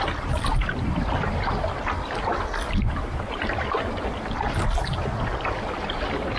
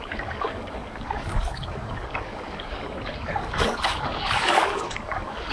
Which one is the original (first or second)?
first